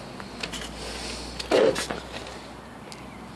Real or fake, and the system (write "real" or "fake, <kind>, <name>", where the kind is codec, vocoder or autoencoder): real